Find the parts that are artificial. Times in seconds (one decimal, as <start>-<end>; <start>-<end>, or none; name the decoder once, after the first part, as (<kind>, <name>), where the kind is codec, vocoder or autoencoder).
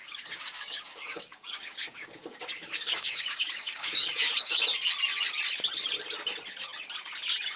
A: 0.0-4.6 (codec, DAC)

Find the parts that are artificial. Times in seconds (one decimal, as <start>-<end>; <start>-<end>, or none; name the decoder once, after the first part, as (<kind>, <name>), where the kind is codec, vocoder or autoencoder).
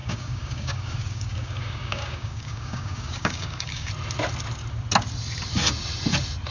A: 0.0-3.9 (codec, DAC)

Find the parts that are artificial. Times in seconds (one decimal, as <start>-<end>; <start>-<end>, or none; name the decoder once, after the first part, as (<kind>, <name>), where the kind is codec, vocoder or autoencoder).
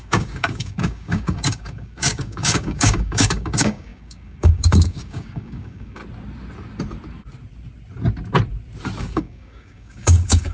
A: 0.0-6.0 (codec, DAC); 9.0-10.5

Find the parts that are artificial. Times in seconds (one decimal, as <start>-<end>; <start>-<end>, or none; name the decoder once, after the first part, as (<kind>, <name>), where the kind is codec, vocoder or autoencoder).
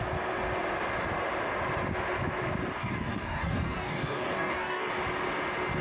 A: 2.8-4.9 (codec, DAC)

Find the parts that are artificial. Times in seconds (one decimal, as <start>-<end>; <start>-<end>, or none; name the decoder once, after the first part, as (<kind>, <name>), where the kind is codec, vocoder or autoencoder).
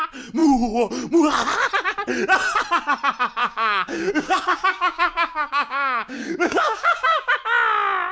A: 3.4-7.3 (codec, DAC)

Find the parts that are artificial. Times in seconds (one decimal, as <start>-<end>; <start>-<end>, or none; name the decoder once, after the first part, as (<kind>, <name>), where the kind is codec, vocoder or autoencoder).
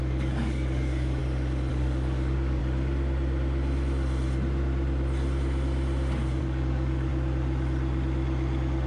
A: 0.0-1.2 (codec, DAC); 1.7-2.6; 6.4-7.1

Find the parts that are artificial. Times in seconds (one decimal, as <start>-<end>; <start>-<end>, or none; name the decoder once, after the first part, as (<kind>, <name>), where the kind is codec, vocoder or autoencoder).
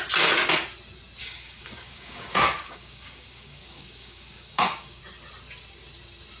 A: 1.2-5.0 (codec, DAC)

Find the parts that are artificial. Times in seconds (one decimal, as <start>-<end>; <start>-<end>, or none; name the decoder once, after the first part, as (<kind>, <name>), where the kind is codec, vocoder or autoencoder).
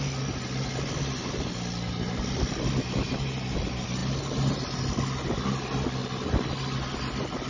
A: none